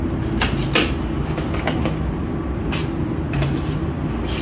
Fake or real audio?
real